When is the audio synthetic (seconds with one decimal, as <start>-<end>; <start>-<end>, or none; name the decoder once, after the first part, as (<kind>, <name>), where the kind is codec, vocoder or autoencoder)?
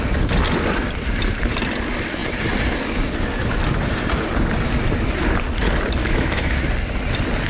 6.0-6.5 (autoencoder, DAC-VAE)